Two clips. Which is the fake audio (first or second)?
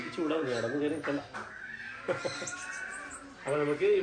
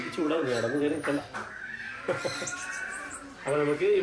second